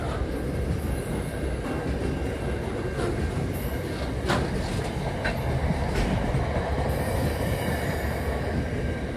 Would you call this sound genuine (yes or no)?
yes